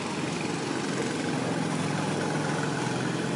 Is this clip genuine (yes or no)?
yes